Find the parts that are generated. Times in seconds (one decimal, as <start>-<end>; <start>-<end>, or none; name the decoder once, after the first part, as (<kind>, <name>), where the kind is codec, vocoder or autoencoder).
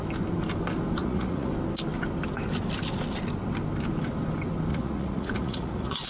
1.0-1.5 (vocoder, Vocos); 4.7-6.1